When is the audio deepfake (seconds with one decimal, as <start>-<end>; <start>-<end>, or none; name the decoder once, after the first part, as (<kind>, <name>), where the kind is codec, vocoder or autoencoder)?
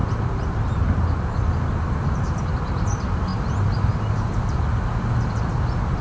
none